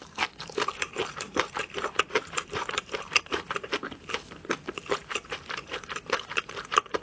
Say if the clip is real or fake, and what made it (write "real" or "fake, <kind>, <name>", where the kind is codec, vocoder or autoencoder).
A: fake, vocoder, BigVGAN v2